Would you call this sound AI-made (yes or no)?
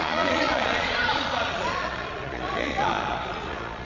yes